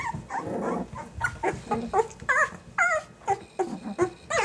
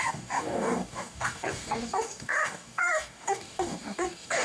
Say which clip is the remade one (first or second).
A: second